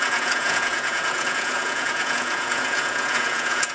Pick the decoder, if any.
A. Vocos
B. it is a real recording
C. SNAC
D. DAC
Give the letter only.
A